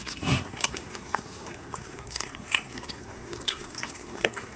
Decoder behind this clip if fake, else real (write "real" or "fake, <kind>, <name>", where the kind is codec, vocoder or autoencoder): fake, codec, SNAC